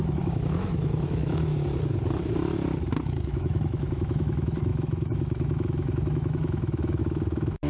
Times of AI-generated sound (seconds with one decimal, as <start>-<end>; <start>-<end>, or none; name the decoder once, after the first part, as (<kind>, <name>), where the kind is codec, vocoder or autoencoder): 0.0-1.5 (autoencoder, DAC-VAE); 3.0-7.7